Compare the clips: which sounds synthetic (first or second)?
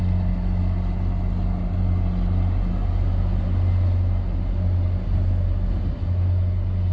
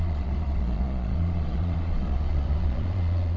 second